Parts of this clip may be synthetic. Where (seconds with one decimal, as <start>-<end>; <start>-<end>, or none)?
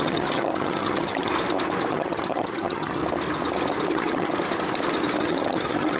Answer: 0.0-1.3; 1.9-3.0; 3.9-4.3; 5.2-6.0